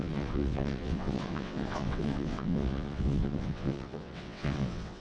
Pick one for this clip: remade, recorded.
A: remade